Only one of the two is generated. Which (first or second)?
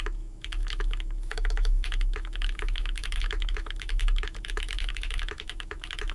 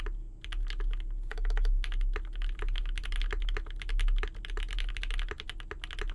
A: first